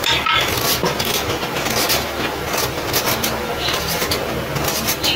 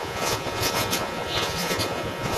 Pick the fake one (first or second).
second